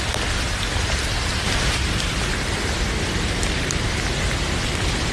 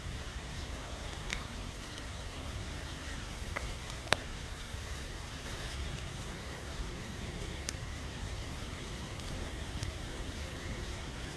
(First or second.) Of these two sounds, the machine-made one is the second